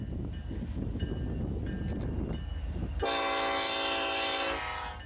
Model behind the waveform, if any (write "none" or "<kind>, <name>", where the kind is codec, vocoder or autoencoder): none